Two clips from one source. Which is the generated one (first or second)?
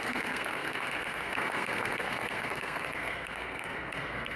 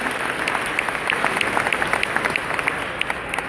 first